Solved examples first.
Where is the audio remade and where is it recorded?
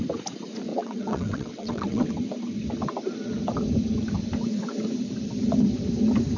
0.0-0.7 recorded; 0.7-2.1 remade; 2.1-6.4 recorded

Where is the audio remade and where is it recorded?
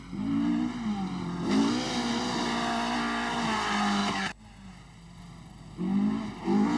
0.0-6.8 recorded